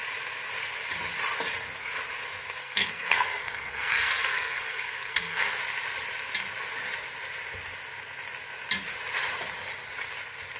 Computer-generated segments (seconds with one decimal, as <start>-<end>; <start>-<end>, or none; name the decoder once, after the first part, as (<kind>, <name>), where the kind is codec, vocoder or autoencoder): 2.6-5.6 (codec, SNAC)